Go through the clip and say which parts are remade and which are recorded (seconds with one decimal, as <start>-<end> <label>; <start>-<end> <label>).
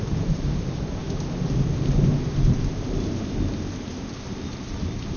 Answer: 0.0-1.0 remade; 1.0-4.1 recorded; 4.1-5.2 remade